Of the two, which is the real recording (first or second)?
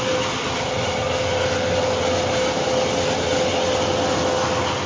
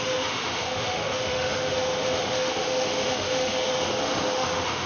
first